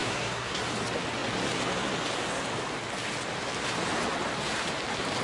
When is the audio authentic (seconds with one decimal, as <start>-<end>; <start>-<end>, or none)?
0.6-5.2